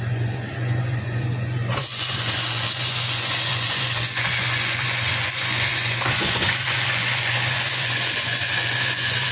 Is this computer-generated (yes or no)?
yes